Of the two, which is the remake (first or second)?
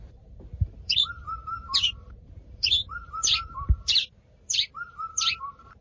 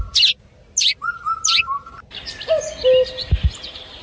first